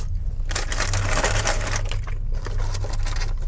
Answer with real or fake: real